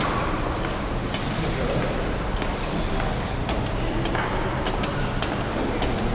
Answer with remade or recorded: recorded